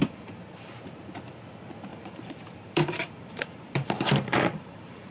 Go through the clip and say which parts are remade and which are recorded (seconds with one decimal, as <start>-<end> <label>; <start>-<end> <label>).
0.0-0.8 remade; 0.8-1.9 recorded; 1.9-5.1 remade